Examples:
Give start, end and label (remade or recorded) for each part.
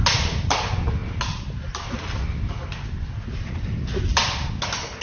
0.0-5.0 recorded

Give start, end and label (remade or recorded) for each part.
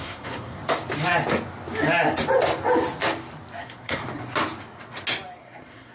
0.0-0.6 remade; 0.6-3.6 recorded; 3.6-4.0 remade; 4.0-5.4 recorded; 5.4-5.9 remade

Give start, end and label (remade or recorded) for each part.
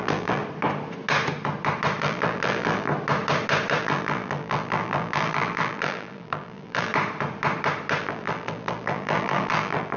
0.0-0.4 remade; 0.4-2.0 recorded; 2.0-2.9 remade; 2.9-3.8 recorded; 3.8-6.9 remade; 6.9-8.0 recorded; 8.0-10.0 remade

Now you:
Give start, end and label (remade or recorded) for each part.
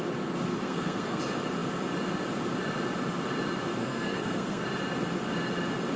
0.0-0.5 recorded; 0.5-1.2 remade; 1.2-3.8 recorded; 3.8-4.6 remade; 4.6-6.0 recorded